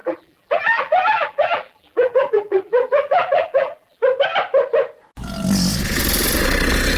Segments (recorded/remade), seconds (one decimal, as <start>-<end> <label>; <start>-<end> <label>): 0.0-4.0 remade; 4.0-7.0 recorded